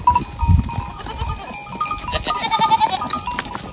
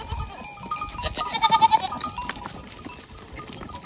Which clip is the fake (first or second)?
second